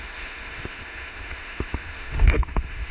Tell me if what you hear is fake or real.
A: fake